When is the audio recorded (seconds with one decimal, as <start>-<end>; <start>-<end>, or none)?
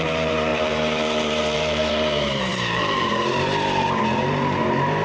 none